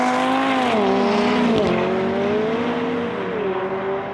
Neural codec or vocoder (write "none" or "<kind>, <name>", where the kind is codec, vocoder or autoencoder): none